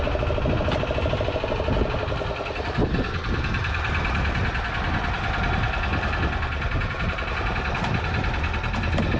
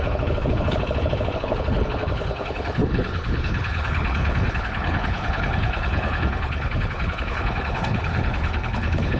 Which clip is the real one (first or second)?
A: first